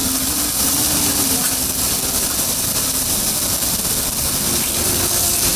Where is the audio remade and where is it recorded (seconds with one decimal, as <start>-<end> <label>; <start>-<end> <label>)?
0.0-0.6 recorded; 0.6-1.4 remade; 1.4-4.8 recorded; 4.8-5.6 remade